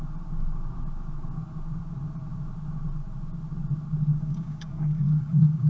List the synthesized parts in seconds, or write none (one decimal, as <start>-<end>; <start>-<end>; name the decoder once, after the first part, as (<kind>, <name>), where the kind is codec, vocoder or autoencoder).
4.1-5.7 (codec, DAC)